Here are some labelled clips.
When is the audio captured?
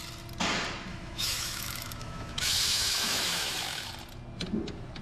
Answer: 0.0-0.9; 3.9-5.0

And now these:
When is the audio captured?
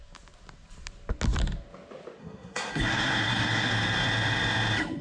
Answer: 0.0-2.2; 3.7-5.0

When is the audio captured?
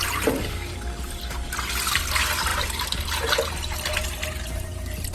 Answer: 0.0-2.5; 3.0-5.1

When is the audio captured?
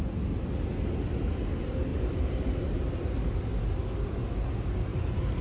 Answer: 0.0-1.9; 3.3-5.4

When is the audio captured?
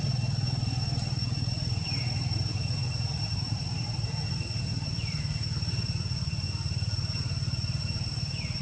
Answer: 0.0-8.6